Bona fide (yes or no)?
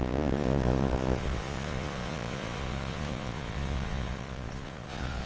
no